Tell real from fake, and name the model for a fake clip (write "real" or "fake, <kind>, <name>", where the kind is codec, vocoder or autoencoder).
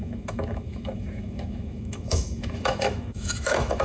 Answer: fake, autoencoder, DAC-VAE